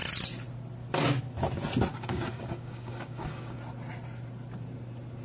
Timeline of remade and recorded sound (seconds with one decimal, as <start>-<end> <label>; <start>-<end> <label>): 0.0-1.9 recorded; 1.9-3.6 remade; 3.6-5.2 recorded